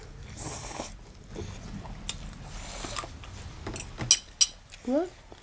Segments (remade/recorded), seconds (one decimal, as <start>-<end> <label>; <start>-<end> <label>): 0.0-5.4 recorded